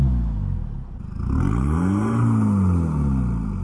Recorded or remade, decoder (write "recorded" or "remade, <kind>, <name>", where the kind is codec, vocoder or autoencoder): recorded